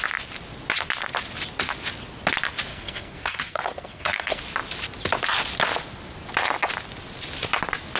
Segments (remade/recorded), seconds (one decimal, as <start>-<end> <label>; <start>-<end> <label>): 0.0-2.7 recorded; 2.7-4.4 remade; 4.4-8.0 recorded